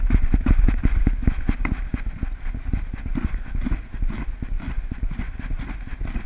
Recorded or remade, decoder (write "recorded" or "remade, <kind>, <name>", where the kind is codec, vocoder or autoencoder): recorded